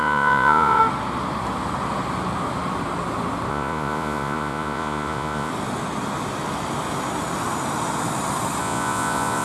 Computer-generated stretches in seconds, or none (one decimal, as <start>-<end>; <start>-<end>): 0.0-0.8; 3.5-5.5; 8.6-9.4